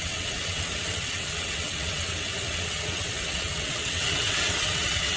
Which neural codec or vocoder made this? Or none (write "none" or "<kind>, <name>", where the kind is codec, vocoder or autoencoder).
vocoder, WaveNeXt